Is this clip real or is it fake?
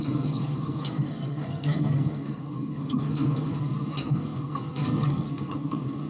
fake